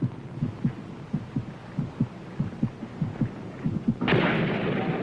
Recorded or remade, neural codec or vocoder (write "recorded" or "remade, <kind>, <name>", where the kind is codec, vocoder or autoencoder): recorded